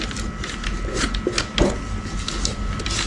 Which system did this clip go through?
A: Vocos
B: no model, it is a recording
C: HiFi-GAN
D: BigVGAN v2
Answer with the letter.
B